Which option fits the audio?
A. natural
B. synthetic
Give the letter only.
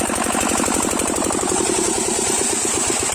A